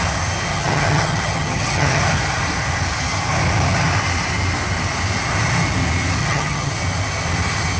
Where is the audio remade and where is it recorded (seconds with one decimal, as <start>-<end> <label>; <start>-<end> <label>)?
0.0-0.5 recorded; 0.5-2.0 remade; 2.0-6.2 recorded; 6.2-6.7 remade; 6.7-7.8 recorded